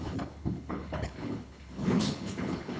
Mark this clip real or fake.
fake